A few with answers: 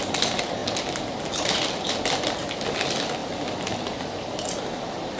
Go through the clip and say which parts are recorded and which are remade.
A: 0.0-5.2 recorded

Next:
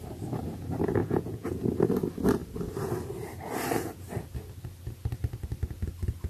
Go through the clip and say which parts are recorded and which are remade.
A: 0.0-1.0 recorded; 1.0-1.6 remade; 1.6-6.3 recorded

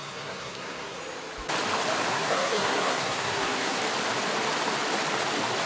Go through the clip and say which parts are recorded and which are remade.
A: 0.0-1.0 remade; 1.0-2.1 recorded; 2.1-3.8 remade; 3.8-5.7 recorded

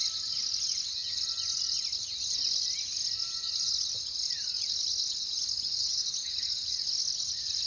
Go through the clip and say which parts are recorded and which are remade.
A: 0.0-5.8 recorded; 5.8-6.5 remade; 6.5-7.7 recorded